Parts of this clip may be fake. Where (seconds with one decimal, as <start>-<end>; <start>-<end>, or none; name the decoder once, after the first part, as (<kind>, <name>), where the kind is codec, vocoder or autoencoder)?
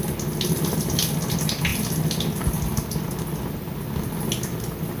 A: none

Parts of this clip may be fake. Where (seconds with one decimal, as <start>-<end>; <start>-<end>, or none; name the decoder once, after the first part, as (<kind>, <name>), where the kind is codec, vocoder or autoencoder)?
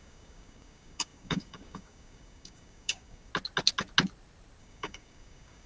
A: 0.0-3.3 (codec, DAC); 4.6-5.7